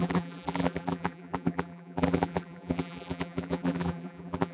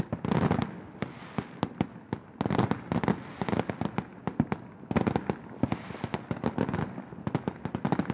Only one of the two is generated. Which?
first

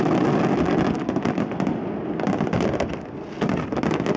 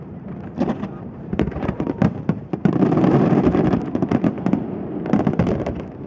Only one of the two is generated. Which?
second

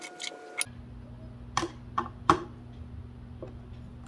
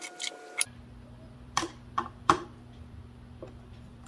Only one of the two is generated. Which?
second